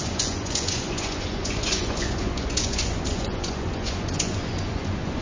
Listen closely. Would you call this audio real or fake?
fake